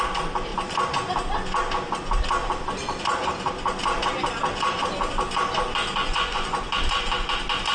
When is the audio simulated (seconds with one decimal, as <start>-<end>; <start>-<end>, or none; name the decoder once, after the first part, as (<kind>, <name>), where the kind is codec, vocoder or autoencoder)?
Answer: 6.0-6.7 (vocoder, Vocos)